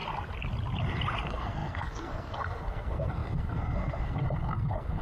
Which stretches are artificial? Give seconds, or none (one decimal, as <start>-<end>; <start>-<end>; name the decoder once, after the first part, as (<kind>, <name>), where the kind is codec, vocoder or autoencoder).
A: 1.2-5.0 (codec, SNAC)